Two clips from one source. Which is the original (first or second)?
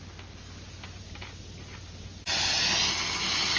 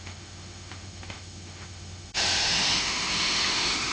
first